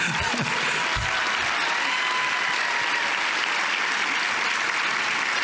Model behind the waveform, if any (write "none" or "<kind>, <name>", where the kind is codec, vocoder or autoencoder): none